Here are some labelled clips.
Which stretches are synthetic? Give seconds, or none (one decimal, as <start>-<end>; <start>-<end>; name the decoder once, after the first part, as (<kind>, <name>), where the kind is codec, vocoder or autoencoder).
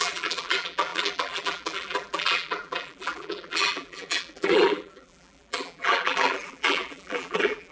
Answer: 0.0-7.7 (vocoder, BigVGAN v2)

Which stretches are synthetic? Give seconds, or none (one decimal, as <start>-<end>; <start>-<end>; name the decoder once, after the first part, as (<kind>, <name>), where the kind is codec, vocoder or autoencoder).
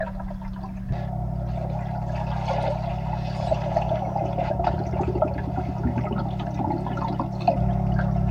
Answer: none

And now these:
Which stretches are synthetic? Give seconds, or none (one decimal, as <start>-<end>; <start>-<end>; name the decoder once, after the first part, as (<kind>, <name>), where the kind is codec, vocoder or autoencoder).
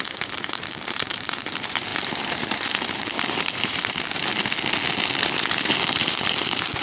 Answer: 0.0-4.3 (vocoder, BigVGAN v2); 5.5-6.8